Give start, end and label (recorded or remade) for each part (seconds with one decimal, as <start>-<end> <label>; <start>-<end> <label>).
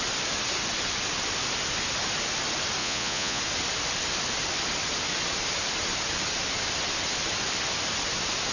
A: 0.0-2.8 recorded; 2.8-3.4 remade; 3.4-8.5 recorded